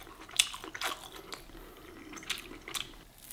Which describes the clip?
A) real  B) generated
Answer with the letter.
A